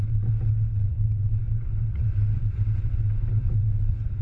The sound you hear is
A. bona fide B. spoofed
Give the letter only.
B